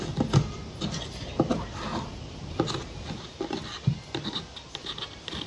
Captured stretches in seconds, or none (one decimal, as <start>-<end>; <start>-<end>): 0.0-5.5